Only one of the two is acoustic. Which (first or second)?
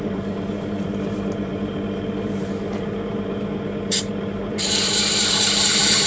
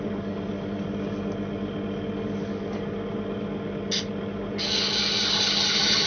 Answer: second